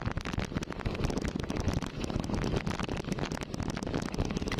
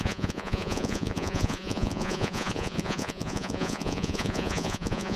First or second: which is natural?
first